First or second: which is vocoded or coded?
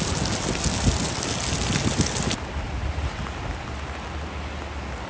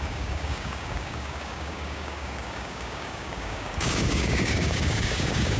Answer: second